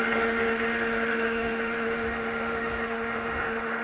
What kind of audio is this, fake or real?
fake